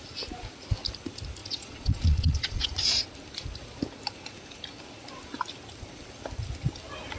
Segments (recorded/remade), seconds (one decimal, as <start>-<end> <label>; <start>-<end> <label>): 0.0-1.4 recorded; 1.4-3.0 remade; 3.0-7.2 recorded